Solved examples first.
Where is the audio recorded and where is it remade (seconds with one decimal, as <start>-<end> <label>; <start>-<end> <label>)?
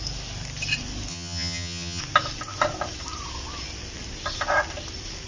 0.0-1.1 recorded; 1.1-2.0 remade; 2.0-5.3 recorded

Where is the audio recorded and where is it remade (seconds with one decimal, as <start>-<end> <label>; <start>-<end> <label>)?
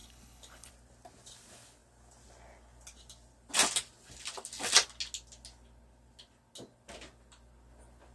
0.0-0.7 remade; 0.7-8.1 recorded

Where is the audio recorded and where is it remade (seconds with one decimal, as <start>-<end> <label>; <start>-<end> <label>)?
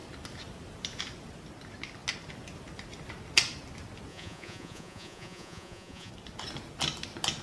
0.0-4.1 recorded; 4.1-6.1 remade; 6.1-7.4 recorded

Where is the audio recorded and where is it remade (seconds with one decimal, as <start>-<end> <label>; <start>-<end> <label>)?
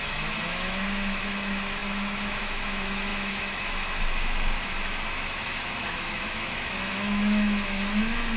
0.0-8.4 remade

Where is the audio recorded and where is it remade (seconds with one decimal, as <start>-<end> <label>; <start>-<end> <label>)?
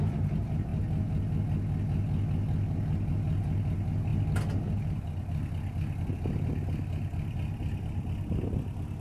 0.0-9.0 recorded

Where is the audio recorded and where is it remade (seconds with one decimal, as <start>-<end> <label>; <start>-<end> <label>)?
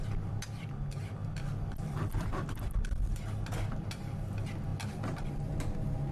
0.0-1.2 recorded; 1.2-4.3 remade; 4.3-6.1 recorded